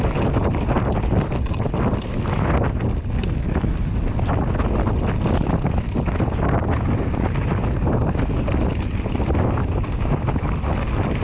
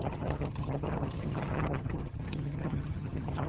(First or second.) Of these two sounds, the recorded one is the first